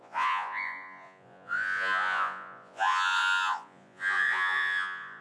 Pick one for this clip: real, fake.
fake